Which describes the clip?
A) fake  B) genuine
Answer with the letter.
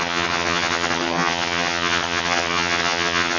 A